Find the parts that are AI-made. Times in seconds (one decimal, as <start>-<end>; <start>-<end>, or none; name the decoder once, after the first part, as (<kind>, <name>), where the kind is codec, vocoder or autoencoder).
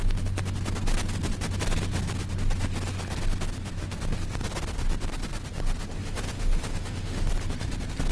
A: 6.0-7.3 (autoencoder, DAC-VAE)